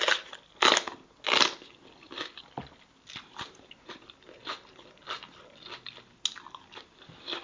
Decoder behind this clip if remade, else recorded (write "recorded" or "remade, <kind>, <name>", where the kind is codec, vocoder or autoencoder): recorded